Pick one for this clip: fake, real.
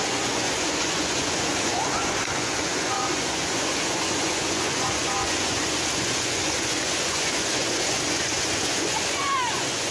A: fake